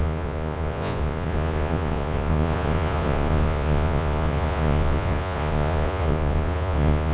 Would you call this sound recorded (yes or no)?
no